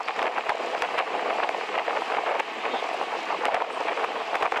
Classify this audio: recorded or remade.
recorded